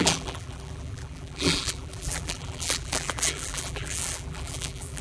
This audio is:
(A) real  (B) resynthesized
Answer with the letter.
B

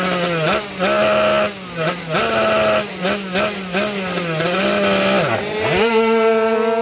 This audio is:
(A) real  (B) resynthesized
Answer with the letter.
A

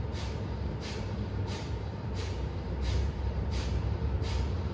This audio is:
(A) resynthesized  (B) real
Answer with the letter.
A